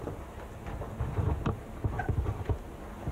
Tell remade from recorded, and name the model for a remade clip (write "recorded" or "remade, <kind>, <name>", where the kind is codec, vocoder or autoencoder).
recorded